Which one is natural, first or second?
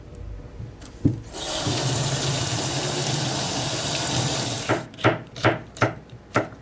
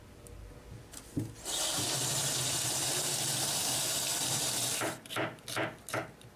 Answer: second